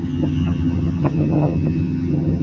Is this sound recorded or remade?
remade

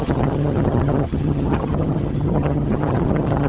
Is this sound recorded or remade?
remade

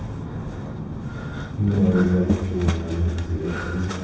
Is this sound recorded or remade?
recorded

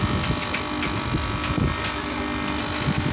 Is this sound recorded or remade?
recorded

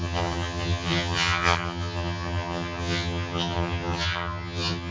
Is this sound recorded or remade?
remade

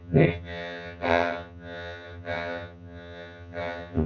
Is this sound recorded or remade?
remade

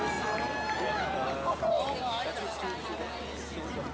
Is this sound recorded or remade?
recorded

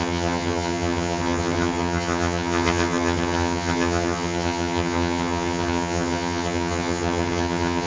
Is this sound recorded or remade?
remade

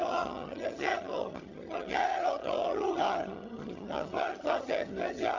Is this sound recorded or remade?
remade